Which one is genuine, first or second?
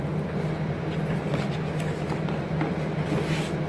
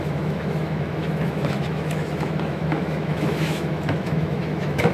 first